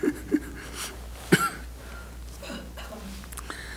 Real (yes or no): yes